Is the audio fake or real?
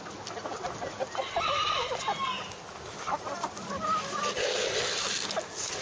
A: real